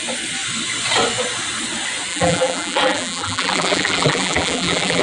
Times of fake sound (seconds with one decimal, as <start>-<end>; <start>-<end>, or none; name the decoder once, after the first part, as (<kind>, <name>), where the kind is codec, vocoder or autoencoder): 2.1-5.0 (vocoder, BigVGAN v2)